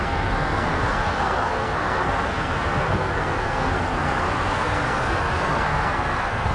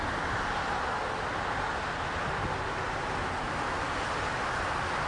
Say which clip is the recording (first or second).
second